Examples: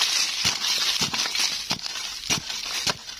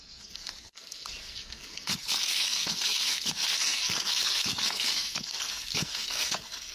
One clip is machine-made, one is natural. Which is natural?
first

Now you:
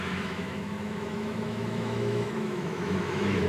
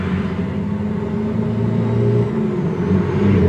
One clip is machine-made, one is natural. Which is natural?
second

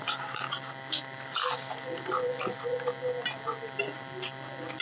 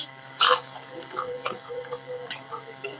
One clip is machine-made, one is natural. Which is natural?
first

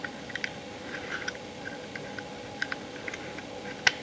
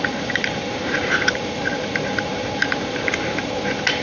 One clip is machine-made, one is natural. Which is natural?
first